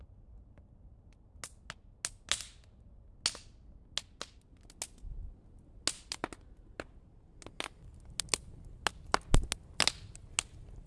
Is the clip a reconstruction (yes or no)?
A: no